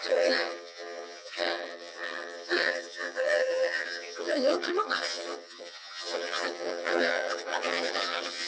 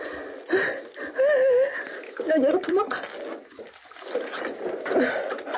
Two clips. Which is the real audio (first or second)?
second